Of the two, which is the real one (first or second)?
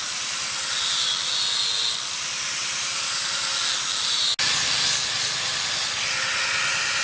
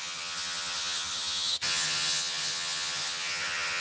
first